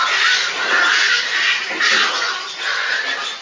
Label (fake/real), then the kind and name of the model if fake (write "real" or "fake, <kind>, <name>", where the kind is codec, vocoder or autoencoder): real